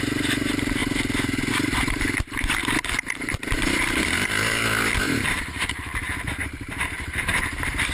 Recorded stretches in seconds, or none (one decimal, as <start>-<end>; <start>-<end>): 0.8-1.5